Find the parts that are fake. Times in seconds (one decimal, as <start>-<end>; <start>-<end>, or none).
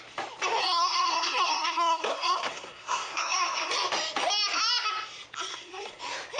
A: 0.6-3.7; 5.5-6.0